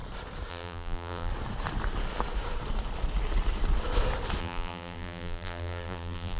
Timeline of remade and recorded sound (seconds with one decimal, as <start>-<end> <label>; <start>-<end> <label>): 0.0-0.5 recorded; 0.5-1.3 remade; 1.3-4.4 recorded; 4.4-6.4 remade